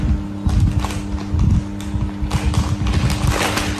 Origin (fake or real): real